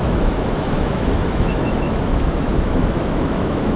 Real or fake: fake